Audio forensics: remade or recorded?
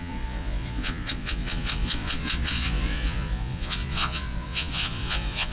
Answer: remade